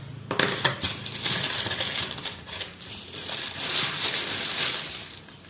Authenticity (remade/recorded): recorded